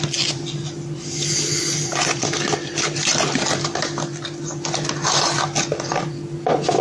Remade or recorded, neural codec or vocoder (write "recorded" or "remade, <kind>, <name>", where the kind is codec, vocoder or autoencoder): recorded